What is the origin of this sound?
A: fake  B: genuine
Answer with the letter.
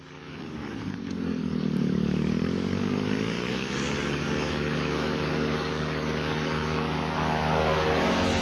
A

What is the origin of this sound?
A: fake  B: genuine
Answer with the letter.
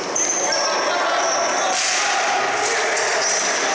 B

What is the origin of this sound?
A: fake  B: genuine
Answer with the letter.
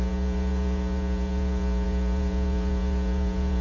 A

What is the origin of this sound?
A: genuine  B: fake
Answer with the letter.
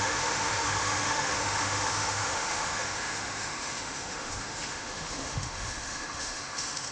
B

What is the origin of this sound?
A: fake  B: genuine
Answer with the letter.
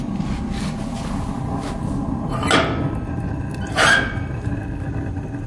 B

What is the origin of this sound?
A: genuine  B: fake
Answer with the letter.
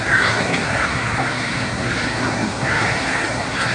B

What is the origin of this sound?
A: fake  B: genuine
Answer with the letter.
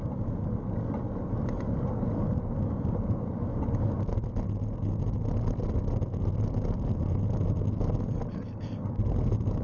B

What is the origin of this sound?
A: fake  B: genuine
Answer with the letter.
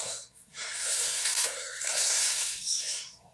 A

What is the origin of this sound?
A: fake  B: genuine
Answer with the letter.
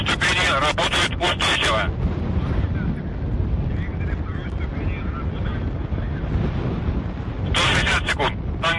B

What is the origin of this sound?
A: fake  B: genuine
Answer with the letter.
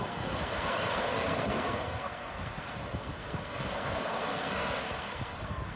A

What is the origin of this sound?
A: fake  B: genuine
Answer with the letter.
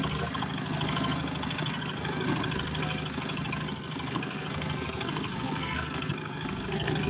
A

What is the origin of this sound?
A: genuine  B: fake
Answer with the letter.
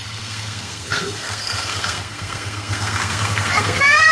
B